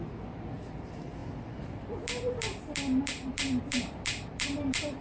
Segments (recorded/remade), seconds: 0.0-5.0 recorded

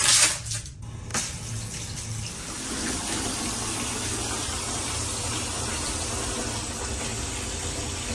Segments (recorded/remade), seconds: 0.0-8.1 recorded

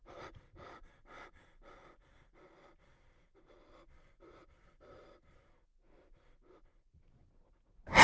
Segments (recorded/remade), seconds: 0.0-8.0 recorded

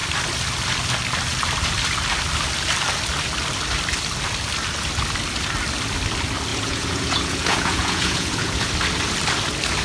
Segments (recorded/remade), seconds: 0.0-6.5 recorded; 6.5-8.7 remade; 8.7-9.8 recorded

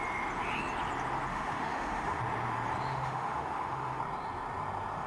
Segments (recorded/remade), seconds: 0.0-1.3 recorded; 1.3-2.2 remade; 2.2-2.9 recorded; 2.9-4.0 remade; 4.0-5.1 recorded